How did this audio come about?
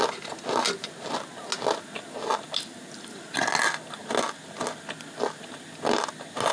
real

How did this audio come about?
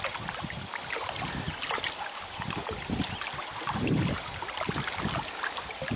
real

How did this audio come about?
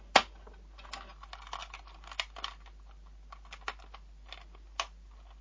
real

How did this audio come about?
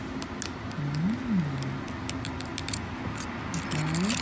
real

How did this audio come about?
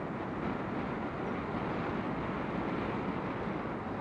real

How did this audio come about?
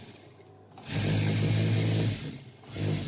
real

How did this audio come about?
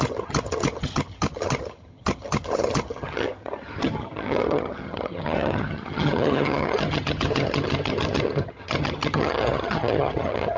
fake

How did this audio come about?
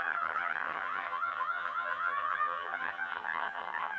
fake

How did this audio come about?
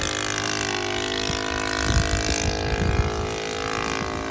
real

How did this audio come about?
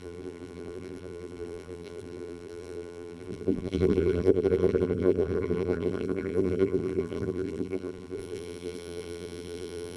fake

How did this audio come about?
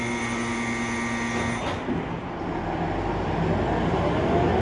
real